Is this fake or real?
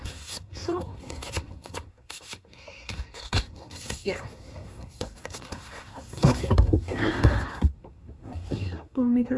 fake